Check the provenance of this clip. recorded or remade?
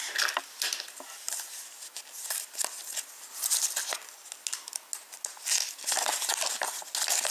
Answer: recorded